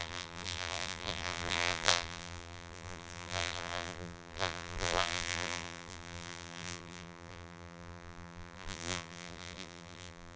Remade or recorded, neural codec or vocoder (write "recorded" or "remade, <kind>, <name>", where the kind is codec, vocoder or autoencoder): remade, vocoder, BigVGAN v2